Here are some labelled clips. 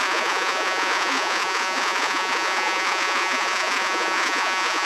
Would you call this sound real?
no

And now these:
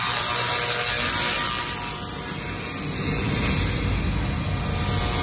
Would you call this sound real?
yes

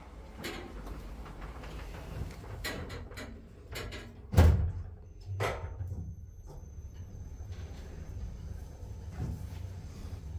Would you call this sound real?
no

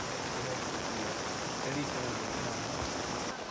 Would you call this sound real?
yes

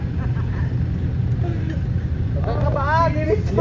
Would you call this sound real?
yes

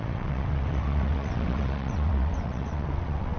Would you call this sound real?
no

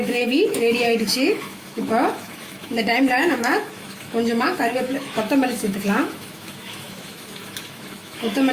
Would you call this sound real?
no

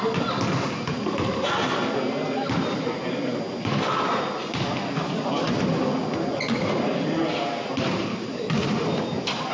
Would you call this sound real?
yes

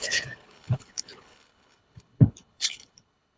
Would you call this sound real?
no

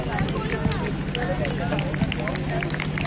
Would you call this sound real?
yes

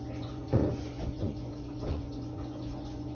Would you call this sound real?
no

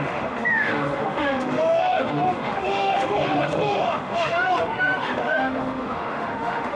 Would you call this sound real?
no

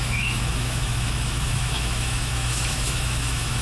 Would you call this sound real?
no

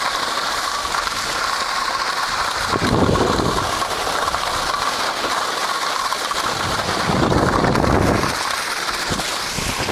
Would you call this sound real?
yes